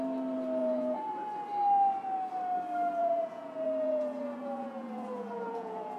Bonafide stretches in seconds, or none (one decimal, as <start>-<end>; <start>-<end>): 0.0-0.6; 1.1-3.0